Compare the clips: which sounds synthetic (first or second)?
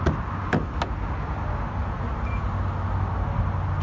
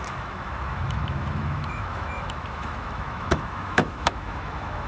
second